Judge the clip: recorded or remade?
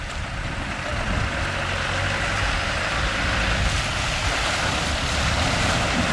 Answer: recorded